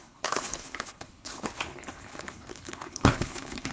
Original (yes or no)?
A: no